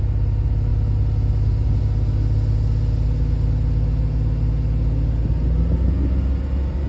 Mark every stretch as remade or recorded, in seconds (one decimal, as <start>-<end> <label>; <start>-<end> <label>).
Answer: 0.0-6.9 recorded